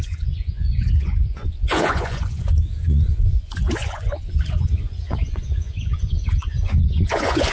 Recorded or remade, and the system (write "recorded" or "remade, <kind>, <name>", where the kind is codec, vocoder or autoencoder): remade, vocoder, Vocos